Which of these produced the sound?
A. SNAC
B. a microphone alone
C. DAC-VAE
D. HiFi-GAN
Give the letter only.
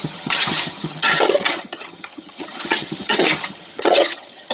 D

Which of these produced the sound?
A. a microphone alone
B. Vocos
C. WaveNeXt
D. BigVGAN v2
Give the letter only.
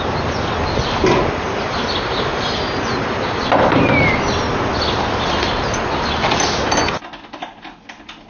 A